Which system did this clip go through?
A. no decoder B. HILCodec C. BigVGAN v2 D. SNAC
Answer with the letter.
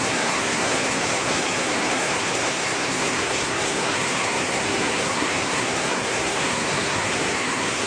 D